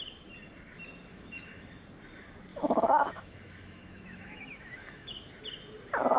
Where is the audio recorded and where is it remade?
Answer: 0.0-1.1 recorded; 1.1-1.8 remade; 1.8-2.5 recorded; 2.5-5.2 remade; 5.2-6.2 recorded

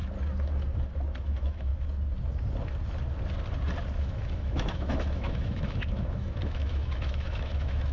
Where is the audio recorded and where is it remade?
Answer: 0.0-1.2 recorded; 1.2-1.7 remade; 1.7-4.0 recorded; 4.0-7.9 remade

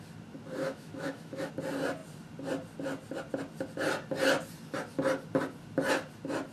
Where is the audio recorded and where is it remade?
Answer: 0.0-0.6 recorded; 0.6-1.5 remade; 1.5-6.5 recorded

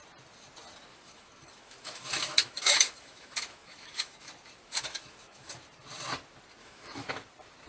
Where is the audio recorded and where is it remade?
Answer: 0.0-0.9 recorded; 0.9-4.3 remade; 4.3-4.7 recorded; 4.7-5.5 remade; 5.5-6.6 recorded; 6.6-7.1 remade; 7.1-7.7 recorded

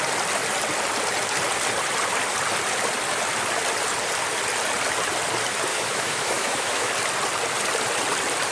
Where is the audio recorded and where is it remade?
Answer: 0.0-5.7 recorded; 5.7-6.9 remade; 6.9-8.5 recorded

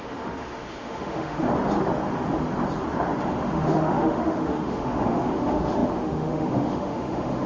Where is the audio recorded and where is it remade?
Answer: 0.0-1.4 remade; 1.4-3.3 recorded; 3.3-7.5 remade